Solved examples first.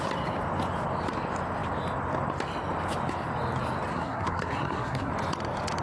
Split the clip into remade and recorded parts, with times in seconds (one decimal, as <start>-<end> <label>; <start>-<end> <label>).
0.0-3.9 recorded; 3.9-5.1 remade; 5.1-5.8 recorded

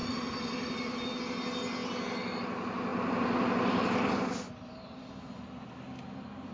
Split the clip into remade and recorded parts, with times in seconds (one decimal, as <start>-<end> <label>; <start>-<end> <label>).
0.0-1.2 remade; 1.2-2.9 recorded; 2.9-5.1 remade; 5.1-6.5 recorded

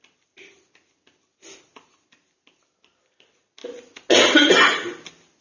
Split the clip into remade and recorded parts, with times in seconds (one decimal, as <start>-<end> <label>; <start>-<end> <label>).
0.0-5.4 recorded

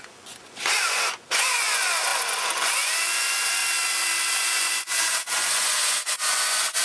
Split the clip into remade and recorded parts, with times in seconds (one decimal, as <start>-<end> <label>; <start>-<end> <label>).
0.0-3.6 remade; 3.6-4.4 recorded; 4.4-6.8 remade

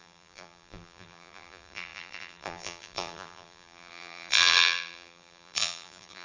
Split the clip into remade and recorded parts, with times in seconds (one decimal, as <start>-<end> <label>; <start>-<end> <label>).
0.0-6.2 remade